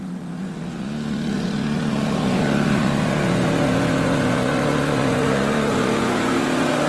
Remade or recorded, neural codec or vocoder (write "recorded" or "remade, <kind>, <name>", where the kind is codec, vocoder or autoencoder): remade, vocoder, Vocos